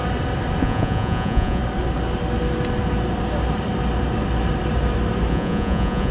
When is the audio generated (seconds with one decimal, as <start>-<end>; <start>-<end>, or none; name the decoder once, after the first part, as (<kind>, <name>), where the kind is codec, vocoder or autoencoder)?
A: 0.6-1.6 (vocoder, Vocos); 5.3-6.1